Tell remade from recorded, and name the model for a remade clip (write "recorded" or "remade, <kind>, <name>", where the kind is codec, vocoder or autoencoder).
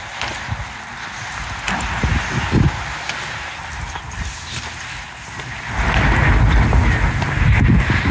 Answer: recorded